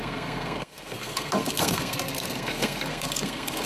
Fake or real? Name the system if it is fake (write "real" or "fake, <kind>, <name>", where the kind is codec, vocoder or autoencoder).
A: fake, codec, SNAC